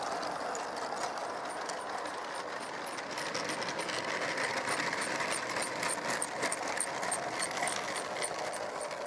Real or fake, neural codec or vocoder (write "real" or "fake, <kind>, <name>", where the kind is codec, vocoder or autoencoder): real